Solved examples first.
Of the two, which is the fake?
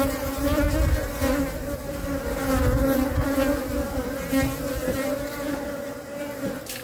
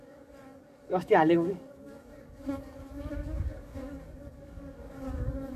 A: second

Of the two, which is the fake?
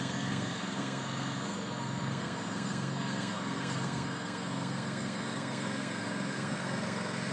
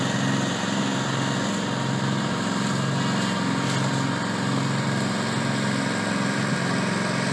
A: first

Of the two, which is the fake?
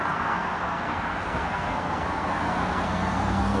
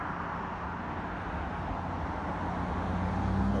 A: first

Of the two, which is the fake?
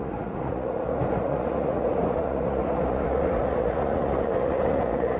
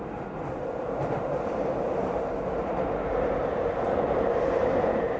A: first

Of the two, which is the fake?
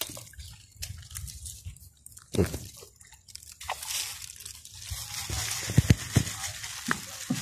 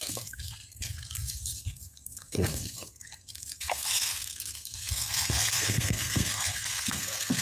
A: second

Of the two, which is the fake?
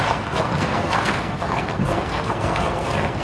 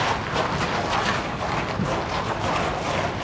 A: first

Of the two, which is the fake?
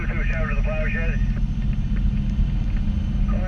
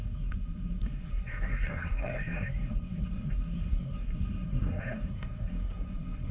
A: second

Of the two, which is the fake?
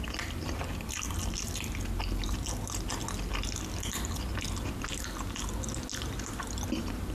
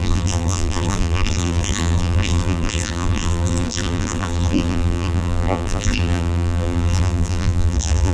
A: second